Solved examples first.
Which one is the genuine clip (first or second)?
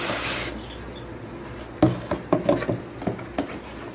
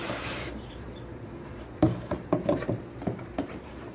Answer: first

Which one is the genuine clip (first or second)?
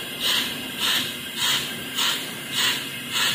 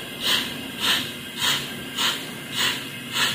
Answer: second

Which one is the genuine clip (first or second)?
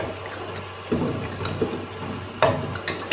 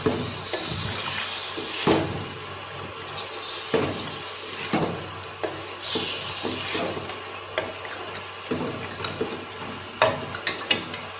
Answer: second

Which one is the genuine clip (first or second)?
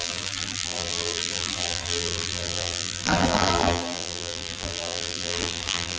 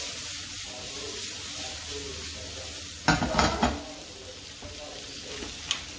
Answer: second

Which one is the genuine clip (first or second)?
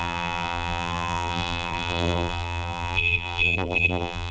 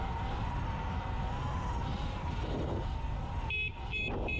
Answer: second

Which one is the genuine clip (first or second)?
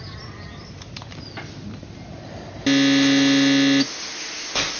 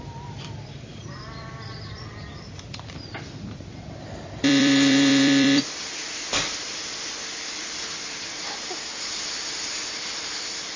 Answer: first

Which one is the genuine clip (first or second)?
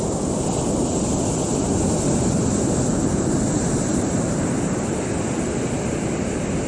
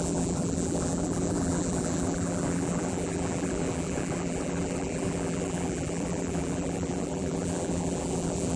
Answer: first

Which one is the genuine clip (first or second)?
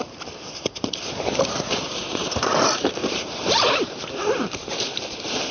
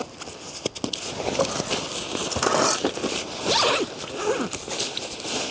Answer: second